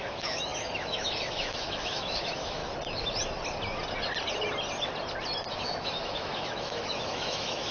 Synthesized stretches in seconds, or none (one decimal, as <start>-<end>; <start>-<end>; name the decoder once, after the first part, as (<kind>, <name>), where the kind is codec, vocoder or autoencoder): 0.0-2.6 (autoencoder, DAC-VAE); 5.5-7.7